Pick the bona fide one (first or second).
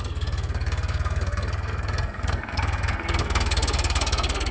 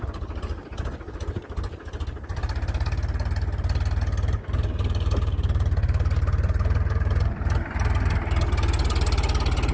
second